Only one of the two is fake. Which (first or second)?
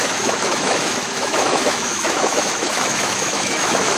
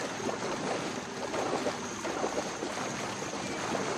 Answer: first